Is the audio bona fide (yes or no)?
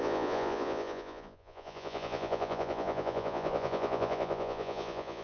no